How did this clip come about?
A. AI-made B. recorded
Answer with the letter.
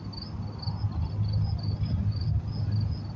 B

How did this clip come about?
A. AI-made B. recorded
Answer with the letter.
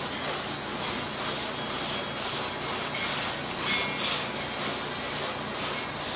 B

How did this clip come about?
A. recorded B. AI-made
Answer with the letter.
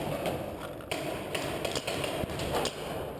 A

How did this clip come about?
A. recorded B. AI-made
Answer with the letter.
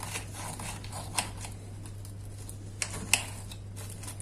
A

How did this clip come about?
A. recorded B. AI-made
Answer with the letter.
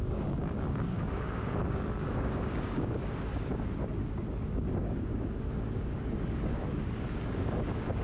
B